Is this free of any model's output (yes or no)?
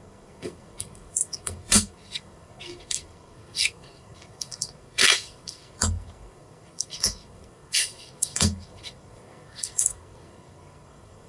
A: no